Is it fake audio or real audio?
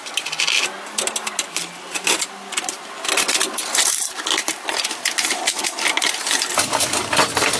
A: real